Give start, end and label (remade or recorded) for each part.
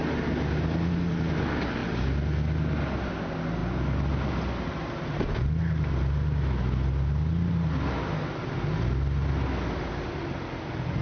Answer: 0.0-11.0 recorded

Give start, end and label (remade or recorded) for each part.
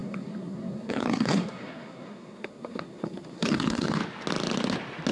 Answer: 0.0-4.0 remade; 4.0-5.1 recorded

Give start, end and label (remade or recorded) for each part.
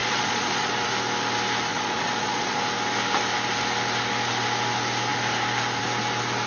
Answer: 0.0-0.7 remade; 0.7-1.7 recorded; 1.7-2.6 remade; 2.6-6.5 recorded